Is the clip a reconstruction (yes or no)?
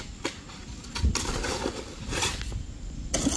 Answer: no